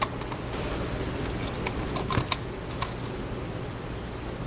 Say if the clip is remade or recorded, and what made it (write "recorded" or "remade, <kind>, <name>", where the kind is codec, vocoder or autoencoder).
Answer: recorded